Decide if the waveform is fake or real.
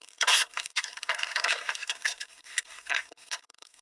fake